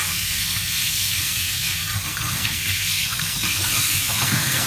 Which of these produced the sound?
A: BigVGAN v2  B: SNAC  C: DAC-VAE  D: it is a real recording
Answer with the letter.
B